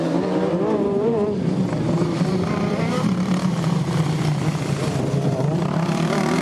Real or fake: fake